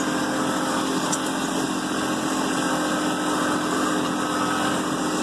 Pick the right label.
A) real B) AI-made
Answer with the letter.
A